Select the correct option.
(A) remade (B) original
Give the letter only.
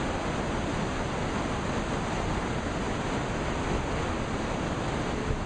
B